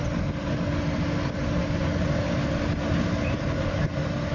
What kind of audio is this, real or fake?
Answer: real